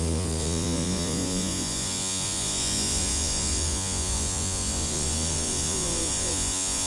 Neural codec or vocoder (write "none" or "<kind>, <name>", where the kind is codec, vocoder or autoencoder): vocoder, Vocos